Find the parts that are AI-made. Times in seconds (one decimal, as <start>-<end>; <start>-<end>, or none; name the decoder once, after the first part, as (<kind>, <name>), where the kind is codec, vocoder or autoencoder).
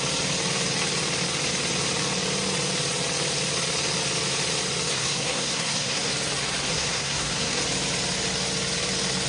4.9-6.1 (codec, SNAC); 6.7-7.6